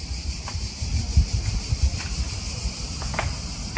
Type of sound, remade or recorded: recorded